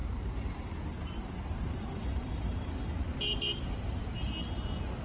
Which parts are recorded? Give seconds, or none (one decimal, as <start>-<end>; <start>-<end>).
3.0-5.0